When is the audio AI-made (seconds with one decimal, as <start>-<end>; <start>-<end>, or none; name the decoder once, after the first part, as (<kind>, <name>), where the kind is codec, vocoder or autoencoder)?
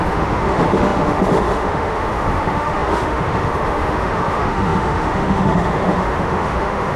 0.0-7.0 (autoencoder, DAC-VAE)